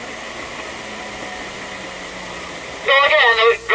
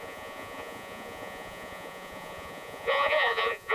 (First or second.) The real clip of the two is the first